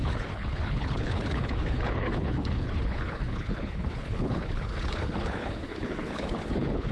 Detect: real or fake fake